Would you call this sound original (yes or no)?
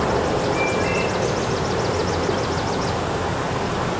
yes